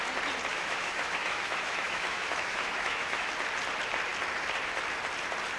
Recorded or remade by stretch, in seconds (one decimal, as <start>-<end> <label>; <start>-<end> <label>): 0.0-0.5 recorded; 0.5-3.3 remade; 3.3-5.6 recorded